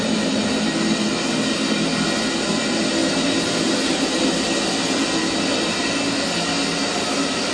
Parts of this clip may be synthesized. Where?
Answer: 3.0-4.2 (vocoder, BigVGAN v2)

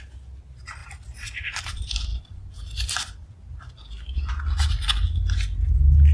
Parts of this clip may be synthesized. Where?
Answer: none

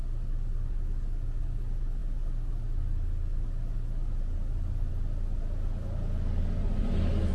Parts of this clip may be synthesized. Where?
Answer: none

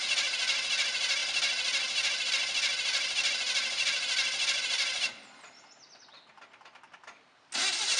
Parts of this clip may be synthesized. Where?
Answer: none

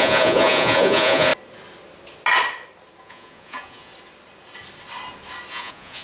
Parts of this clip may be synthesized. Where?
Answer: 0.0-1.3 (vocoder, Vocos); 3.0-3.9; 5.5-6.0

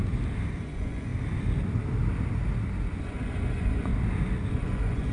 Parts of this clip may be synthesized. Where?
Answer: 0.6-1.1 (vocoder, Vocos); 3.0-3.9; 4.5-5.1

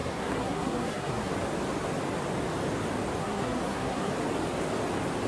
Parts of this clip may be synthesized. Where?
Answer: 0.0-1.3 (codec, SNAC); 3.2-4.1

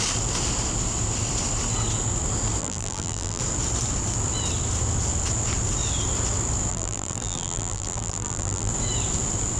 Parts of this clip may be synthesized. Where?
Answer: 2.6-3.4 (vocoder, BigVGAN v2); 6.7-8.7